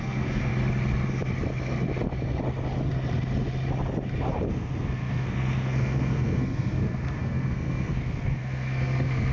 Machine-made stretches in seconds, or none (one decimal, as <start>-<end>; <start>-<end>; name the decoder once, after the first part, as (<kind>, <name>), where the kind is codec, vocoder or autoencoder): 0.0-0.5 (codec, SNAC); 4.5-9.3